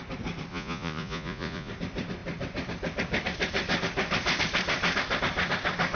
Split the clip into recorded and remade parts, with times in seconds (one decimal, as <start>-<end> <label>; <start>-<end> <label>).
0.0-0.5 recorded; 0.5-1.7 remade; 1.7-6.0 recorded